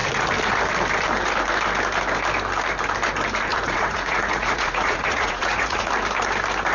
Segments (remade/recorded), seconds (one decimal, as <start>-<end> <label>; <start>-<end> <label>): 0.0-3.5 recorded; 3.5-5.9 remade; 5.9-6.7 recorded